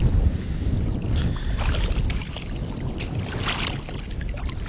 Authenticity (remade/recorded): recorded